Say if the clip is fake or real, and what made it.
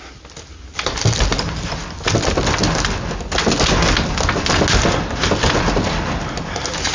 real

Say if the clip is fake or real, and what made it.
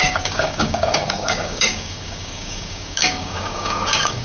fake, codec, DAC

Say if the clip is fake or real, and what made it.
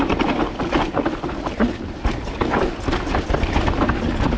real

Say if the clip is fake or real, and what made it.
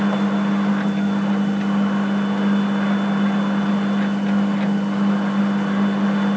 real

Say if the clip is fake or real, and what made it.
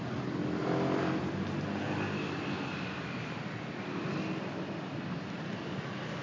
real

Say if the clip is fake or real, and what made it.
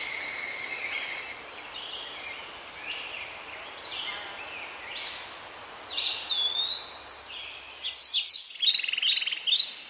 real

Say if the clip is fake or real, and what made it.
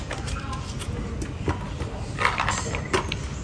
real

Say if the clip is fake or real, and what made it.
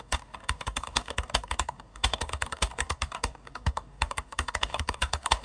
fake, codec, DAC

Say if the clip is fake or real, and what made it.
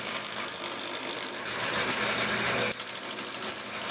real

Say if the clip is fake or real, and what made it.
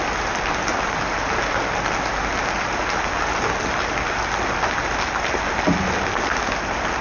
real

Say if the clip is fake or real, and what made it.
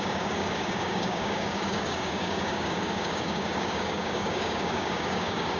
fake, codec, DAC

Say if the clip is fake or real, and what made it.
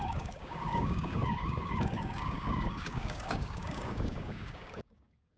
fake, codec, DAC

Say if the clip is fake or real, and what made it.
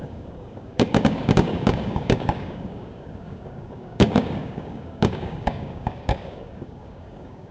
fake, codec, DAC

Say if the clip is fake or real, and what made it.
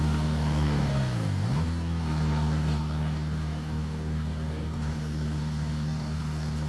fake, codec, DAC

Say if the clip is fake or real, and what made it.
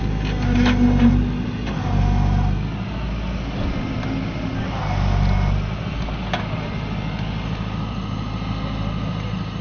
real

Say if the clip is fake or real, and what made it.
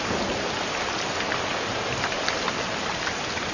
real